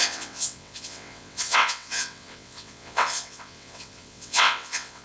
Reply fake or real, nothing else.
fake